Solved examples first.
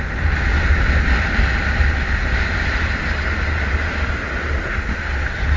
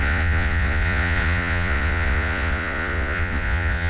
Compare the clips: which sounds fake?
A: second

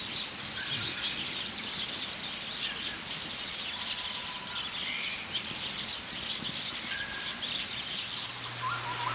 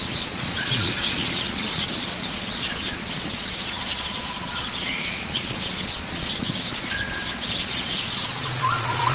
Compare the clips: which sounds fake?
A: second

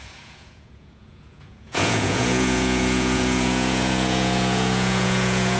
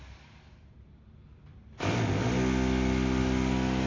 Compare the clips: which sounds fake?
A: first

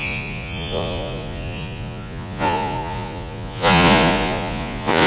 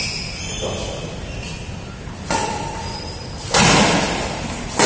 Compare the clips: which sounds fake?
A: first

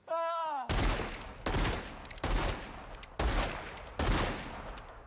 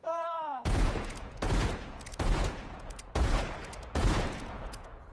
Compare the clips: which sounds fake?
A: second